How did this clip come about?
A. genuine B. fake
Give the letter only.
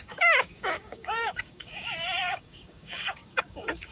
B